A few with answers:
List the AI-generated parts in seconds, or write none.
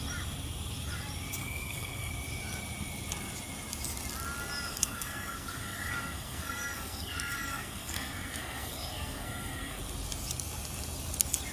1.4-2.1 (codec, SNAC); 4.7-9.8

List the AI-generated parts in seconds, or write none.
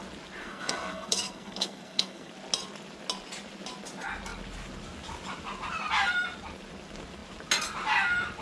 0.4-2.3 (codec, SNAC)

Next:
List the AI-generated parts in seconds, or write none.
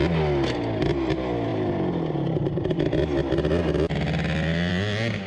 none